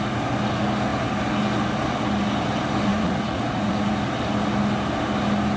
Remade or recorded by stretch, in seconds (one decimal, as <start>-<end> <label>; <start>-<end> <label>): 0.0-2.9 recorded; 2.9-3.9 remade; 3.9-5.6 recorded